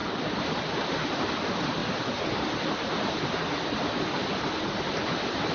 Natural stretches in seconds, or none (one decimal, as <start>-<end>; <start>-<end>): 0.0-5.5